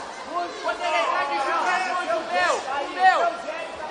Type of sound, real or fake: real